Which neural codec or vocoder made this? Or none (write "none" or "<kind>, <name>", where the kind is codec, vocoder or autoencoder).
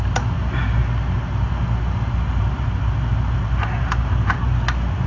none